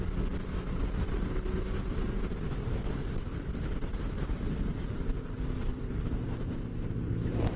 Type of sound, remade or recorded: recorded